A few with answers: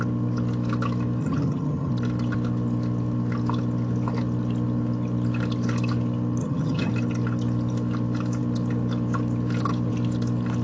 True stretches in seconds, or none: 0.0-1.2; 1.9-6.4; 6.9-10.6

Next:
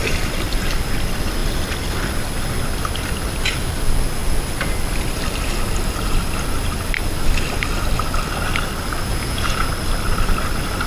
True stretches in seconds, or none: 0.0-9.1; 9.7-10.9

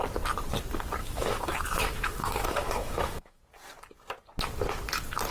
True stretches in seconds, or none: 0.0-1.0; 3.4-5.3

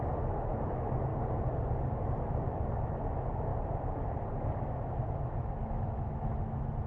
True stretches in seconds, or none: 1.1-2.7; 3.5-4.4